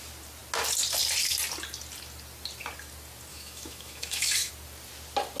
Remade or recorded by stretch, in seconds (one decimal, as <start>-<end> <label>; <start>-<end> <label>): 0.0-3.3 recorded; 3.3-4.5 remade; 4.5-5.4 recorded